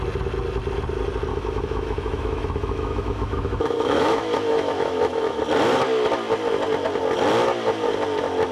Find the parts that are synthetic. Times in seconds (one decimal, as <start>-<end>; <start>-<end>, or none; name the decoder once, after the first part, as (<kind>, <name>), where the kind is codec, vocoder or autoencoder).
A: 1.3-5.4 (autoencoder, DAC-VAE)